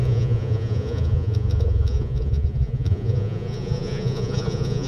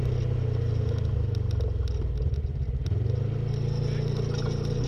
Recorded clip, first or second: second